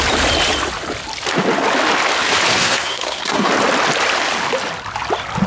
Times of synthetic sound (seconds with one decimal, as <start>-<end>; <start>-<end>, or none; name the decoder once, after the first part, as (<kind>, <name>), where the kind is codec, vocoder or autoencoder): 2.6-3.5 (codec, SNAC)